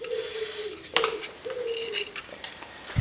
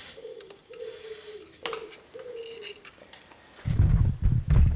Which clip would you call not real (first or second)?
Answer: first